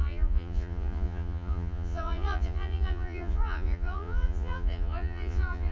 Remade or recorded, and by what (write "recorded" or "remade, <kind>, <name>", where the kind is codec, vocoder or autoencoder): remade, vocoder, Vocos